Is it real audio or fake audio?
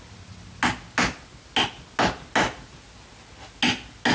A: real